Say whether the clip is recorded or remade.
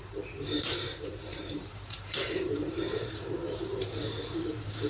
remade